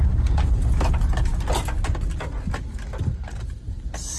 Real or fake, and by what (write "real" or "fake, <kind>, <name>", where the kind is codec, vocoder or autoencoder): real